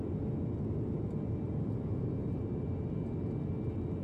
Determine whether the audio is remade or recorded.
recorded